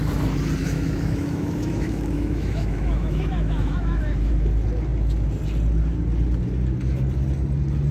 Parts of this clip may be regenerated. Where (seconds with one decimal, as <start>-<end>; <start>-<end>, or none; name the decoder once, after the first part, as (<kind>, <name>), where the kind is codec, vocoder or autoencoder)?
0.6-4.3 (autoencoder, DAC-VAE)